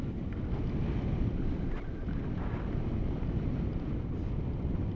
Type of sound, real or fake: real